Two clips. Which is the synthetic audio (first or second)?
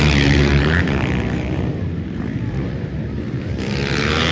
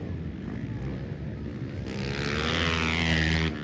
first